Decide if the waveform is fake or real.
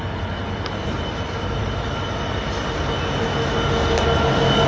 real